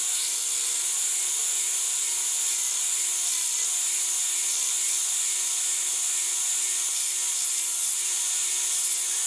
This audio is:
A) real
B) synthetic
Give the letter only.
A